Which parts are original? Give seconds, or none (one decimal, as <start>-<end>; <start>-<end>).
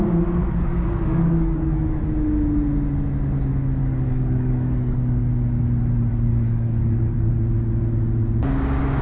0.0-0.4; 2.0-3.8; 5.2-6.1; 7.3-9.0